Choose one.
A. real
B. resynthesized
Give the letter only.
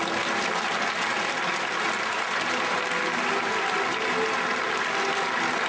A